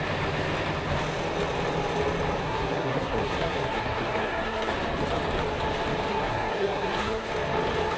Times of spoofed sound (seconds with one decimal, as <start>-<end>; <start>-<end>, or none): 2.4-4.7; 6.1-7.3